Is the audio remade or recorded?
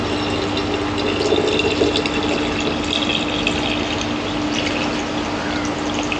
recorded